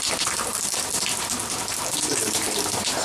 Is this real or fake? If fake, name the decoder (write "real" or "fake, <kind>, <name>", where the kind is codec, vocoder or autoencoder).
fake, vocoder, BigVGAN v2